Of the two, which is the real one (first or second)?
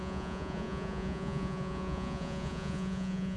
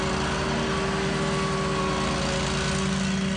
second